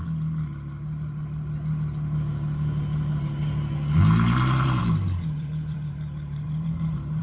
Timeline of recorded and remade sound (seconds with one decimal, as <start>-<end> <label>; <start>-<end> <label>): 0.0-4.8 recorded; 4.8-7.2 remade